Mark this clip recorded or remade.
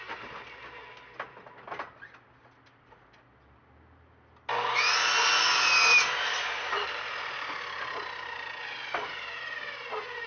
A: recorded